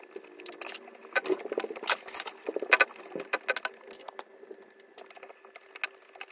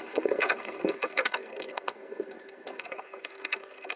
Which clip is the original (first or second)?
first